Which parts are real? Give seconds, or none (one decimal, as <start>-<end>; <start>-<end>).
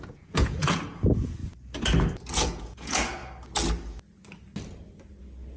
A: 1.4-2.3; 3.2-5.6